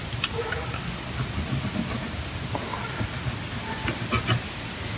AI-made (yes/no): no